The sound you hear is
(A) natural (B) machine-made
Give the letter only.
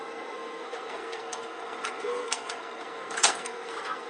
B